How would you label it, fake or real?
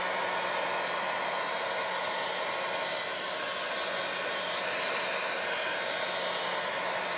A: real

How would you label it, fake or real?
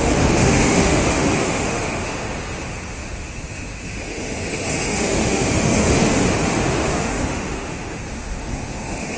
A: fake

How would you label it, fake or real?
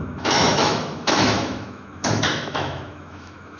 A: fake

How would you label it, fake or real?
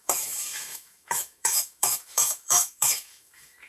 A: fake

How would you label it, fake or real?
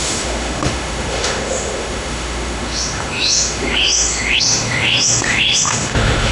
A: fake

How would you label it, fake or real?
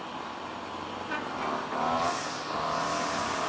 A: real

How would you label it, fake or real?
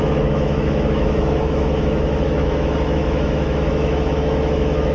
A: fake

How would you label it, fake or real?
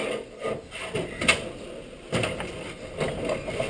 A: real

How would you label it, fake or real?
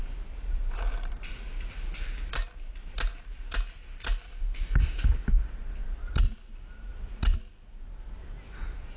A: real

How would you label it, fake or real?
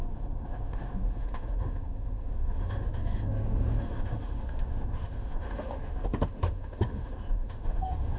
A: fake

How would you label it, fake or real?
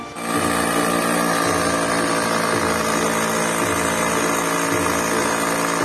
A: real